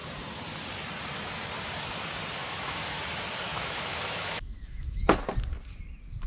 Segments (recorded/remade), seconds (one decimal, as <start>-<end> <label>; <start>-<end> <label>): 0.0-2.4 recorded; 2.4-3.0 remade; 3.0-3.5 recorded; 3.5-5.1 remade; 5.1-6.3 recorded